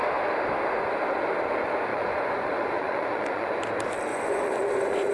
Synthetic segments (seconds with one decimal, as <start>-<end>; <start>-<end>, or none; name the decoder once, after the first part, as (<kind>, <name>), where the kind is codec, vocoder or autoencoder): 1.9-3.6 (vocoder, Vocos); 4.1-5.1